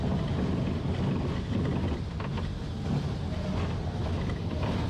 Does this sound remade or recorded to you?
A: recorded